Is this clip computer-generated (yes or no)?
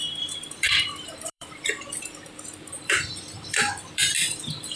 yes